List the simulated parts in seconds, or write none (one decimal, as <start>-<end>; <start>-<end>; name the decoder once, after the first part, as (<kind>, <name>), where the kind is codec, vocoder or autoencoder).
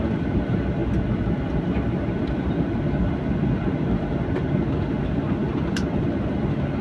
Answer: none